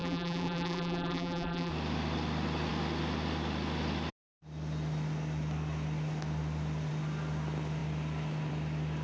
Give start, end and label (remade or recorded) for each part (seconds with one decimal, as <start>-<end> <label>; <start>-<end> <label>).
0.0-1.7 remade; 1.7-9.0 recorded